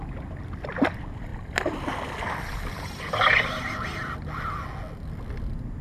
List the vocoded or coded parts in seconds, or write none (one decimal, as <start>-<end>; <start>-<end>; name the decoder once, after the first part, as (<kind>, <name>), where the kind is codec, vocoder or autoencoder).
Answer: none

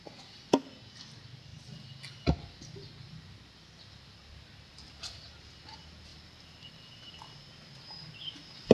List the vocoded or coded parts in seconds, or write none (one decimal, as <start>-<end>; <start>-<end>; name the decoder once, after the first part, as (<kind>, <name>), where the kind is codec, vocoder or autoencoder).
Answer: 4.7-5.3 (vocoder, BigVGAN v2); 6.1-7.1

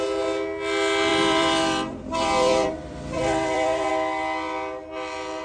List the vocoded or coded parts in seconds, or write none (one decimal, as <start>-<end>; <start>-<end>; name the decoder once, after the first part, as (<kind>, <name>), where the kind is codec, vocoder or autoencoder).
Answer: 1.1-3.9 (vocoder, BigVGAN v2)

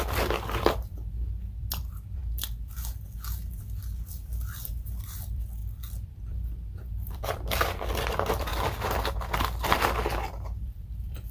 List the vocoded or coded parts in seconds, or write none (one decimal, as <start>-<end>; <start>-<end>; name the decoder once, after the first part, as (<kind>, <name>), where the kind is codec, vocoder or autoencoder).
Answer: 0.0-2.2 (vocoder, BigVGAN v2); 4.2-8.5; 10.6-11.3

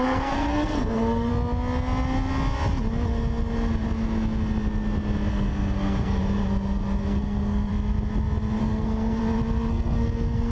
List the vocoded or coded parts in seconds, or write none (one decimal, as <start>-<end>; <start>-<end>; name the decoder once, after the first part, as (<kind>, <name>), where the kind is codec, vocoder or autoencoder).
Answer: 0.0-1.3 (codec, SNAC); 5.3-6.2; 7.0-7.7; 8.6-9.2; 9.7-10.5